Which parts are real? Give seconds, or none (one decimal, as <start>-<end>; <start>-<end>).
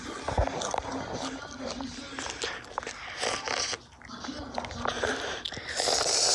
0.0-6.3